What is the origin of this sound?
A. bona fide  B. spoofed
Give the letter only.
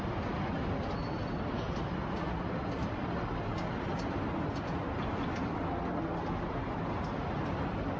A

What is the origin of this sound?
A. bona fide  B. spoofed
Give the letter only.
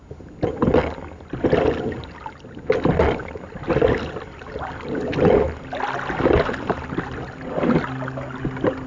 A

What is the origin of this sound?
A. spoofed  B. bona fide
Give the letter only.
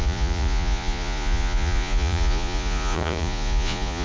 A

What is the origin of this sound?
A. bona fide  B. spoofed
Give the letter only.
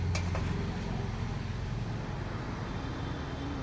A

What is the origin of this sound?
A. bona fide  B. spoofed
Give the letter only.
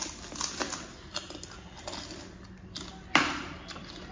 A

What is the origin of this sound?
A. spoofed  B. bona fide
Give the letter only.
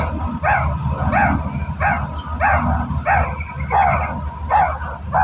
B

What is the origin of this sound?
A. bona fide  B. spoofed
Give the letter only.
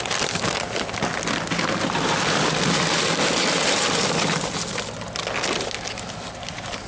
A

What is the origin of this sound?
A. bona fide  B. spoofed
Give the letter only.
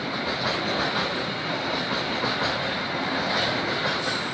A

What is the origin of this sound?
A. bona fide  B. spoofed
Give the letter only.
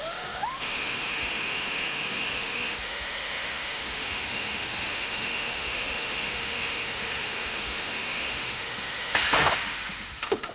B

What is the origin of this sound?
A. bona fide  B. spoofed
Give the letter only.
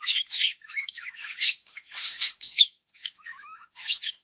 B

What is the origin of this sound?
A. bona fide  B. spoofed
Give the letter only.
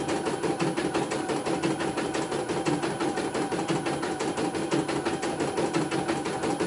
A